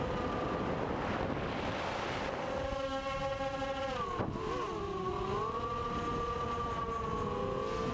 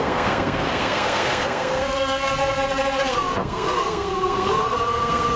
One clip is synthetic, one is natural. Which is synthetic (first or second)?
second